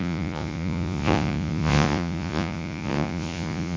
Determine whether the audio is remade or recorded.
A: remade